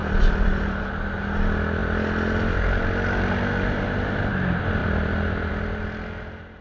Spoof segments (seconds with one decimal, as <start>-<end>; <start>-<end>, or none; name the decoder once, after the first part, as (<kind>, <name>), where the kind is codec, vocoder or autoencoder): 0.0-0.8 (vocoder, BigVGAN v2); 4.8-5.5